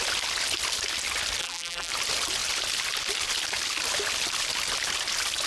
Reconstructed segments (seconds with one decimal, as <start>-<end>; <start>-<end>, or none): 1.4-1.9